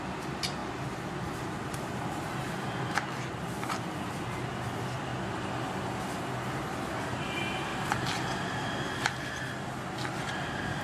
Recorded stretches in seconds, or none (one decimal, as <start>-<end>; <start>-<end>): 0.0-10.8